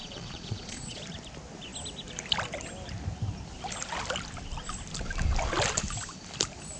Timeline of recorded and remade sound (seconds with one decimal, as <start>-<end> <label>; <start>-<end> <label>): 0.0-1.0 remade; 1.0-6.8 recorded